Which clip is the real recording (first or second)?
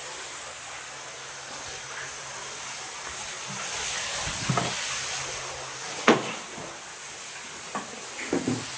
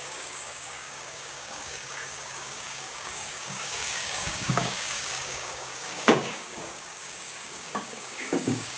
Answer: first